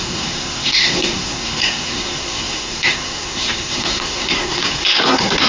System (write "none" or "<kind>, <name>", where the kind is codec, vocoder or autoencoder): codec, SNAC